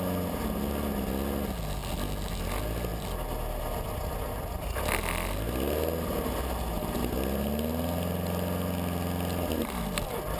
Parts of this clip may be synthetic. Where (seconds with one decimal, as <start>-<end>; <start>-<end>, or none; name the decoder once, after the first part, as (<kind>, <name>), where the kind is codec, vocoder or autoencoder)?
none